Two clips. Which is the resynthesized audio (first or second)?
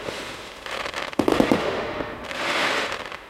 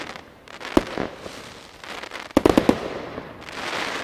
first